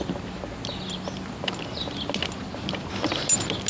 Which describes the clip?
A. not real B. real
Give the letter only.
B